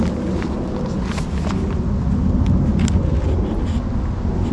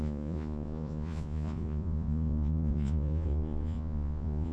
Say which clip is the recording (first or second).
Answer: first